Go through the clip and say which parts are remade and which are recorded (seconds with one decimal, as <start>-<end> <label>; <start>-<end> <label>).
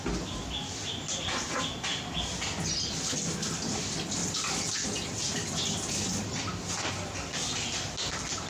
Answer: 0.0-8.5 recorded